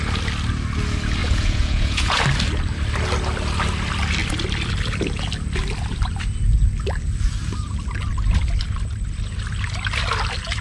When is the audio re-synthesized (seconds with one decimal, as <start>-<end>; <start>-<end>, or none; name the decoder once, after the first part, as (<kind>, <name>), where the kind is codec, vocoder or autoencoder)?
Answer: 1.2-2.2 (vocoder, Vocos)